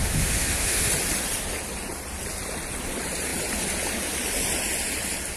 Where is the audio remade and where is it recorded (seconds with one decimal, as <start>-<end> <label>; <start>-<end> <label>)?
0.0-0.9 remade; 0.9-5.4 recorded